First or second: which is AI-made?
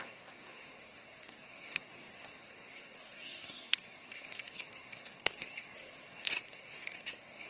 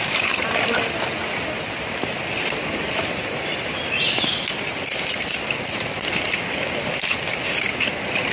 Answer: first